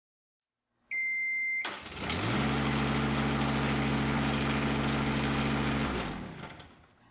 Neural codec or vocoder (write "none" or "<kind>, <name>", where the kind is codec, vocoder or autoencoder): none